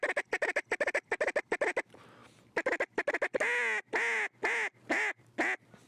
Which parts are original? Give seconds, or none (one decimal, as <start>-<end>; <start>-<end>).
0.0-5.9